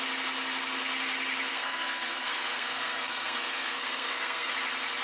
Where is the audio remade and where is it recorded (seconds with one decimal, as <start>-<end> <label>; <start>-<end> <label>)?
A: 0.0-1.5 recorded; 1.5-4.5 remade; 4.5-5.0 recorded